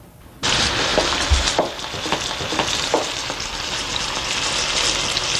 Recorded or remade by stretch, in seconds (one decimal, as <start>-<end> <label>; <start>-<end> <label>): 0.0-5.4 recorded